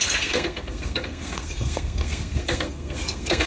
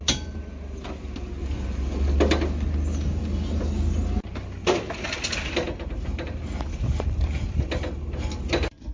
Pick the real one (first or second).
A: second